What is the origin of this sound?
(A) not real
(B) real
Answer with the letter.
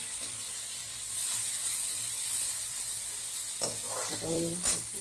A